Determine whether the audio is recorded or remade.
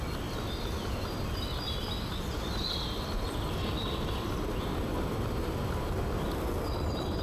recorded